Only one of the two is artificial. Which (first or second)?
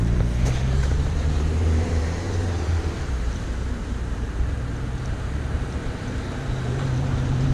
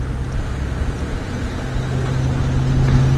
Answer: first